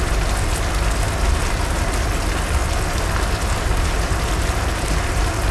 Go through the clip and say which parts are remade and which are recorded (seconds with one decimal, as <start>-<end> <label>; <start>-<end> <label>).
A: 0.0-5.5 recorded